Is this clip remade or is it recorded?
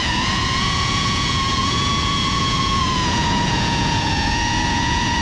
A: remade